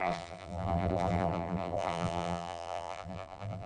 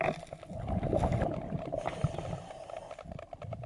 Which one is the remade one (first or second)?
first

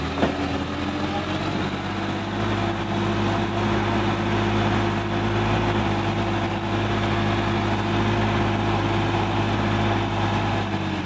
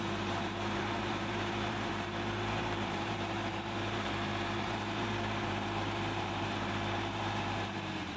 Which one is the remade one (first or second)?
second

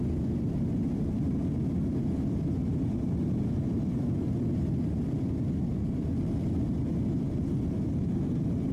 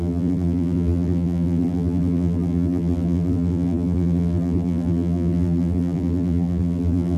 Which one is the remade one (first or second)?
second